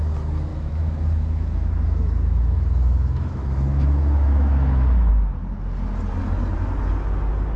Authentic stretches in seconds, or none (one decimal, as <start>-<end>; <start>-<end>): 0.0-0.5; 5.1-7.6